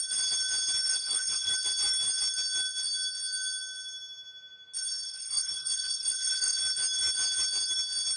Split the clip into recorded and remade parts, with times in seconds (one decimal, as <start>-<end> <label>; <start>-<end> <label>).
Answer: 0.0-0.9 recorded; 0.9-1.5 remade; 1.5-5.1 recorded; 5.1-6.6 remade; 6.6-8.2 recorded